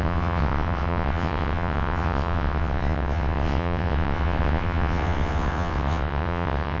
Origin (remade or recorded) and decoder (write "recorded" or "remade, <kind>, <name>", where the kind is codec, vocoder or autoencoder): remade, vocoder, WaveNeXt